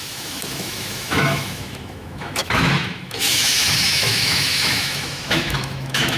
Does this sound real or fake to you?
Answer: fake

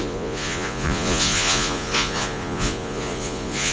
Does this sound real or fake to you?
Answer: fake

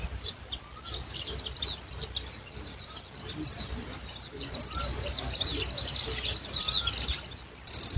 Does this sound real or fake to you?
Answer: real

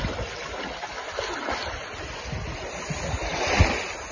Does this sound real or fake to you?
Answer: real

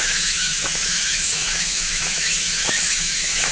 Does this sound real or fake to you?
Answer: fake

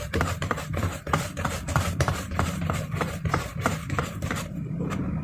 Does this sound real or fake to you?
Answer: fake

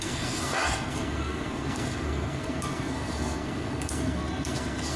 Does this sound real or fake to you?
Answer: fake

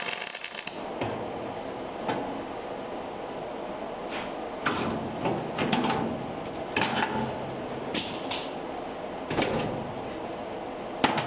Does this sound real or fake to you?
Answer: real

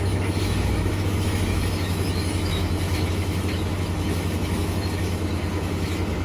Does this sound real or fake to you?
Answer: fake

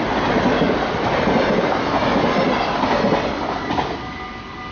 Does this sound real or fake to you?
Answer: real